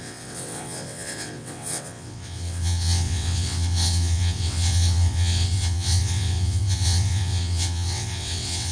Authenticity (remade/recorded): remade